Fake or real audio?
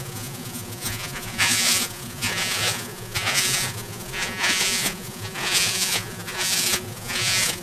fake